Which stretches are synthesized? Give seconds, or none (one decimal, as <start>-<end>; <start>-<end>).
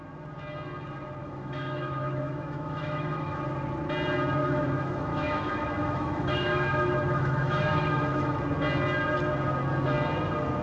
1.2-3.4; 4.4-8.4